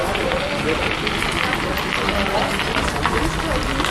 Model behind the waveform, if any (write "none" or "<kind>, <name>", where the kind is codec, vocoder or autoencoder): none